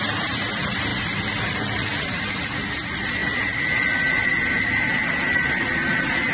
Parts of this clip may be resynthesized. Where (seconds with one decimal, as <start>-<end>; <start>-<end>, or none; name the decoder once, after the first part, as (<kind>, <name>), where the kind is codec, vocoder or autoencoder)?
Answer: 0.0-6.3 (vocoder, BigVGAN v2)